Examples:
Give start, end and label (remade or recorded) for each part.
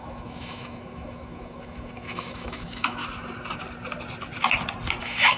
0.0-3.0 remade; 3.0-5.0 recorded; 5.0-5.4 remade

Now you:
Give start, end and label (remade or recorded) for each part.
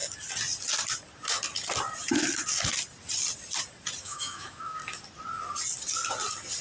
0.0-4.0 recorded; 4.0-4.8 remade; 4.8-6.6 recorded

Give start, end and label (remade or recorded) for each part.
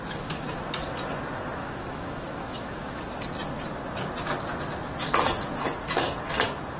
0.0-1.6 recorded; 1.6-3.0 remade; 3.0-6.8 recorded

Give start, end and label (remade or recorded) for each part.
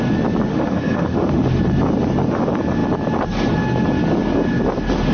0.0-0.5 recorded; 0.5-1.4 remade; 1.4-5.1 recorded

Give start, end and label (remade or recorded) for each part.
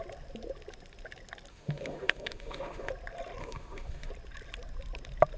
0.0-1.5 recorded; 1.5-2.9 remade; 2.9-3.4 recorded; 3.4-4.1 remade; 4.1-5.4 recorded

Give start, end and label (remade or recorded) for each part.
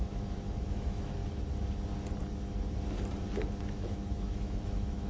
0.0-1.2 remade; 1.2-3.6 recorded; 3.6-5.1 remade